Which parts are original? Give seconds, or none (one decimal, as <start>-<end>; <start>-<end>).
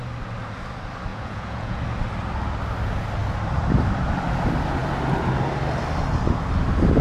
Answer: 0.0-1.1; 1.8-7.0